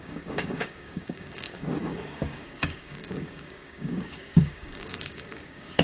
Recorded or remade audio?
remade